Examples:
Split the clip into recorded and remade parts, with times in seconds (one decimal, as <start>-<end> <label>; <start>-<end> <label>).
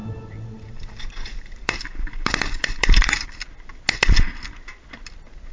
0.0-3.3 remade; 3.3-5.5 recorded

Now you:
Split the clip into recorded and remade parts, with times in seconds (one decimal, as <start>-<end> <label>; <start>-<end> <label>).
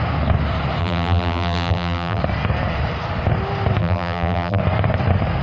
0.0-0.8 recorded; 0.8-2.2 remade; 2.2-3.8 recorded; 3.8-4.6 remade; 4.6-5.4 recorded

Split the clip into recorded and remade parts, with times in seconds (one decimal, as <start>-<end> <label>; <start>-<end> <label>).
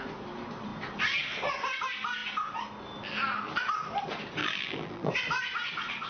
0.0-4.4 recorded; 4.4-5.1 remade; 5.1-6.1 recorded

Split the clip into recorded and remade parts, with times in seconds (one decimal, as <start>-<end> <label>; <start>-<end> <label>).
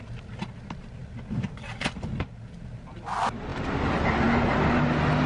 0.0-3.5 recorded; 3.5-4.8 remade; 4.8-5.3 recorded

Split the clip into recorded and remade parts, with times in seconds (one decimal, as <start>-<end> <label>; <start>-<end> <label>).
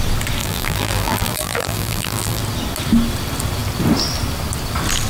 0.0-0.4 recorded; 0.4-2.4 remade; 2.4-5.1 recorded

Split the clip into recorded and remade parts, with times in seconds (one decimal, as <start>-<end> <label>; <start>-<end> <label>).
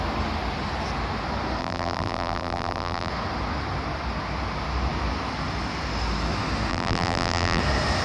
0.0-1.6 recorded; 1.6-3.1 remade; 3.1-6.7 recorded; 6.7-7.6 remade; 7.6-8.0 recorded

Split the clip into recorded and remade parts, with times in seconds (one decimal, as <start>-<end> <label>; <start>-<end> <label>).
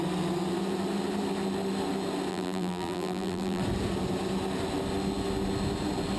0.0-2.3 recorded; 2.3-3.6 remade; 3.6-6.2 recorded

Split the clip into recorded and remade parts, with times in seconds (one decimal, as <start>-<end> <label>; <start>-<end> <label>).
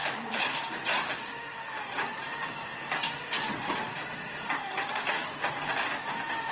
0.0-1.3 remade; 1.3-2.7 recorded; 2.7-5.1 remade; 5.1-6.5 recorded